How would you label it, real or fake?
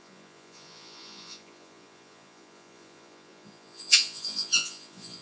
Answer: fake